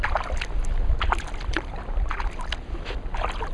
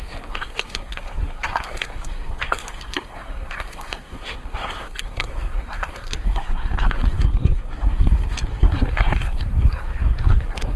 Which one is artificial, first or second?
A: second